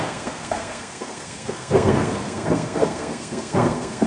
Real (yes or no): no